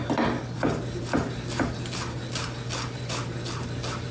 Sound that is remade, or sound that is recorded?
recorded